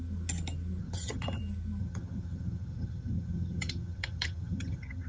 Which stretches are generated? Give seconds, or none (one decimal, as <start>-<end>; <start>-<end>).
0.8-1.4; 1.8-5.1